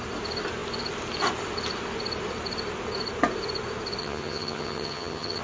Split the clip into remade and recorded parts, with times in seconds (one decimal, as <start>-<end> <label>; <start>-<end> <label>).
0.0-4.0 recorded; 4.0-5.4 remade